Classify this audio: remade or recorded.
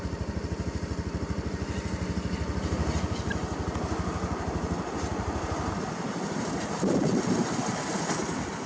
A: recorded